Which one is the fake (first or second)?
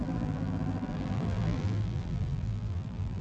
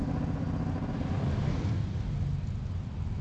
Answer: first